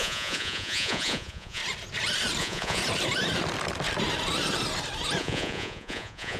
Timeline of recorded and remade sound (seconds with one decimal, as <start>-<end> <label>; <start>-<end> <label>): 0.0-1.6 remade; 1.6-2.4 recorded; 2.4-2.8 remade; 2.8-5.2 recorded; 5.2-6.4 remade